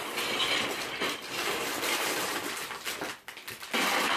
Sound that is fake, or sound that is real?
real